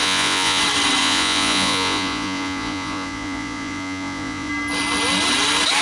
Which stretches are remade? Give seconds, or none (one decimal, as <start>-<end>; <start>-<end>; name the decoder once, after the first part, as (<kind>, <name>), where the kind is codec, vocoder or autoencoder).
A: 0.0-0.6 (vocoder, Vocos); 1.0-4.5